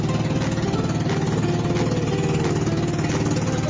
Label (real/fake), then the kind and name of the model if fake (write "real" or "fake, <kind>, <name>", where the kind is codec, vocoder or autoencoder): real